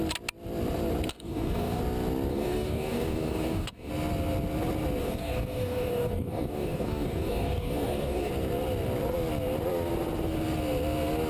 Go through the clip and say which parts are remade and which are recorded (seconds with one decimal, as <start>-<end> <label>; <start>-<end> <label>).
0.0-1.1 recorded; 1.1-1.8 remade; 1.8-2.3 recorded; 2.3-3.9 remade; 3.9-5.0 recorded; 5.0-8.3 remade; 8.3-11.3 recorded